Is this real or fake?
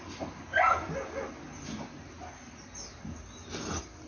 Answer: real